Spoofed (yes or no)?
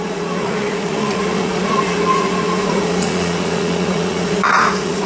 yes